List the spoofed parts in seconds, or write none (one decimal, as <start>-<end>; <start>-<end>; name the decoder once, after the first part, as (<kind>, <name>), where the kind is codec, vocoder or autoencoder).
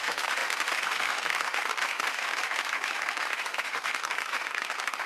0.0-5.1 (autoencoder, DAC-VAE)